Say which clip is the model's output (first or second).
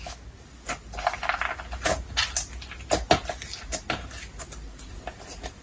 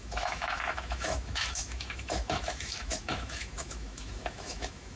second